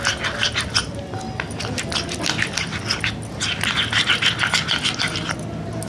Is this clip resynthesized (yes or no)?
no